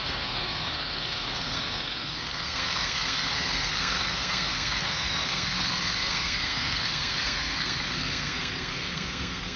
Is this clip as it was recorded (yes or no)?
no